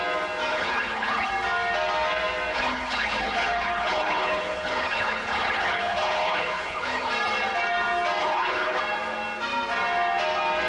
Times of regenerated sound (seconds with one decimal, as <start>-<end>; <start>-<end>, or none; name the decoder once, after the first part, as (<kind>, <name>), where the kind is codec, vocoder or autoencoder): 0.5-1.3 (codec, HILCodec); 2.5-7.1; 8.2-8.8